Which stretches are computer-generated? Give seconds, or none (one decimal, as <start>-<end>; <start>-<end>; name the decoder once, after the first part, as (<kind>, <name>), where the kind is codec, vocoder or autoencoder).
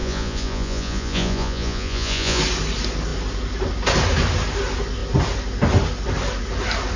0.0-2.4 (vocoder, Vocos)